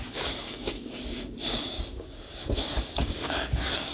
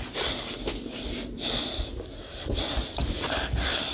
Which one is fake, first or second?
first